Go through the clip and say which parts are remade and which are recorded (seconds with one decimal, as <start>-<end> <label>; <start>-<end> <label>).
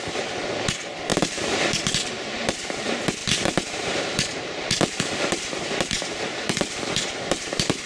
0.0-1.1 recorded; 1.1-2.8 remade; 2.8-3.2 recorded; 3.2-7.9 remade